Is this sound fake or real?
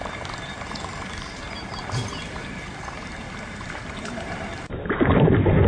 fake